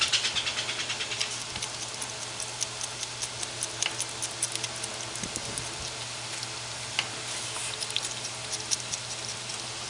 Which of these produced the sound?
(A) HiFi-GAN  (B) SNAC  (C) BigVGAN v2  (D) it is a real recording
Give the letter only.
D